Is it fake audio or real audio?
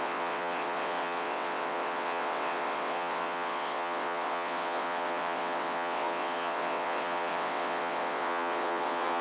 fake